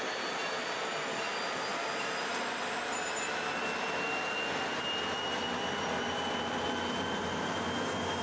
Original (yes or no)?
yes